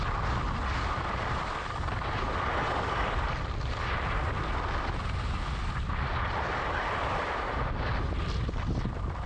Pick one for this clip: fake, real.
real